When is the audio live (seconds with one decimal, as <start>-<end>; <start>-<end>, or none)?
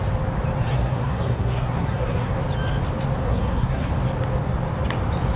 0.0-0.7; 2.4-3.2; 3.9-5.4